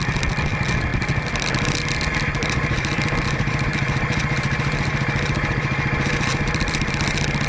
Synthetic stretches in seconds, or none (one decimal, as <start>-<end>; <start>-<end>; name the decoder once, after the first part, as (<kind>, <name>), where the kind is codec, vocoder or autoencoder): 2.4-6.9 (vocoder, BigVGAN v2)